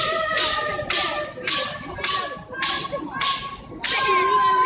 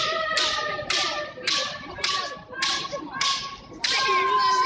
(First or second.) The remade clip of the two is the second